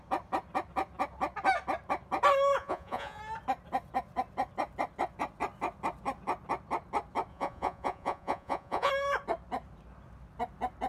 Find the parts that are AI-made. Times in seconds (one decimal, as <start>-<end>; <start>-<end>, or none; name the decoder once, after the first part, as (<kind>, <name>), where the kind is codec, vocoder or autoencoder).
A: 2.6-3.2 (vocoder, Vocos); 7.3-8.9

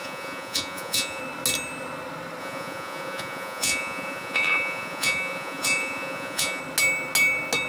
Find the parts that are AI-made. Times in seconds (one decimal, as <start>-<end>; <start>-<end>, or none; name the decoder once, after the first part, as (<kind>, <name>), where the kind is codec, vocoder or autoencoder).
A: 0.0-1.2 (vocoder, Vocos); 2.4-6.6

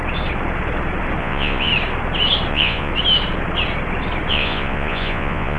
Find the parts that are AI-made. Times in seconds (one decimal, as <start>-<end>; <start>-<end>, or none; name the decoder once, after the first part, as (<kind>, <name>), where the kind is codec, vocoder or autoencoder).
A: 1.2-1.7 (vocoder, Vocos); 2.5-2.9; 4.3-5.6